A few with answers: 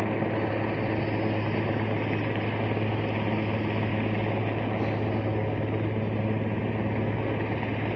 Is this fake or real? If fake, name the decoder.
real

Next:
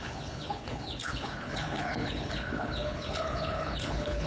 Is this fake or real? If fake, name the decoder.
fake, codec, HILCodec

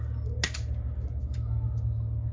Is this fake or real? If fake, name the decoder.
real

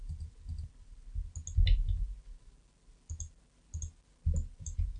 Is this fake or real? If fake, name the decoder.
real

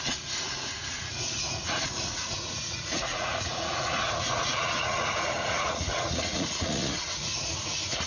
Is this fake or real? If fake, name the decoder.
fake, vocoder, Vocos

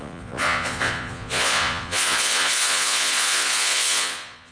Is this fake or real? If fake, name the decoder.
fake, vocoder, Vocos